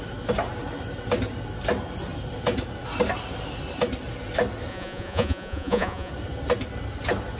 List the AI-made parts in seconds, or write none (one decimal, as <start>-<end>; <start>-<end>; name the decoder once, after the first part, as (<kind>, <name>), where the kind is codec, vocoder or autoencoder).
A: 4.7-6.1 (vocoder, Vocos)